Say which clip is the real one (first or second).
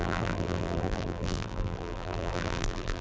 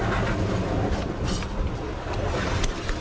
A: second